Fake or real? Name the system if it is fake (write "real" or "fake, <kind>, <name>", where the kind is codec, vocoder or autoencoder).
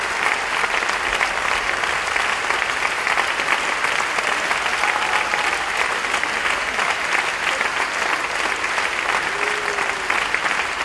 real